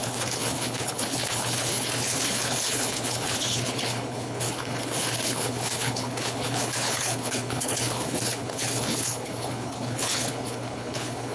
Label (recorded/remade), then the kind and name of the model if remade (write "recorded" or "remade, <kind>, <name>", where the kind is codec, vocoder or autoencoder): remade, codec, HILCodec